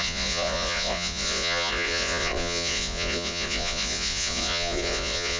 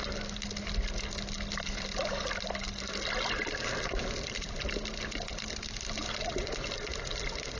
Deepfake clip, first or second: first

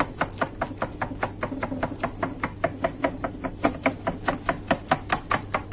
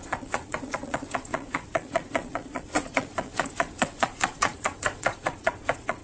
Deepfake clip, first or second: second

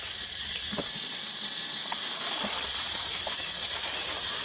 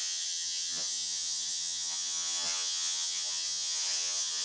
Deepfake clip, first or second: second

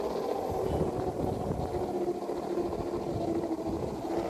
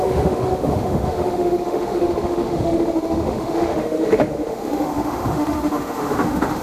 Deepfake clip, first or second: second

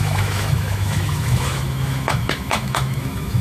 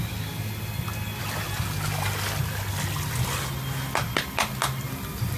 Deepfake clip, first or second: first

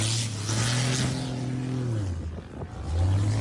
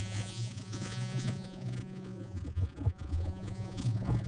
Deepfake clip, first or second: second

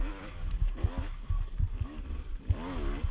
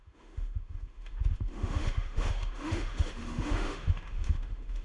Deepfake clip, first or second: second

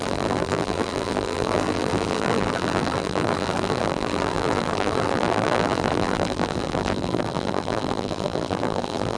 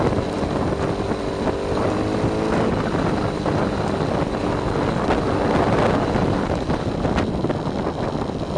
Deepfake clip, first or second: first